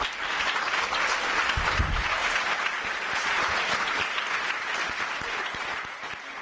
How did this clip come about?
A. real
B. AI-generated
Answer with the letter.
A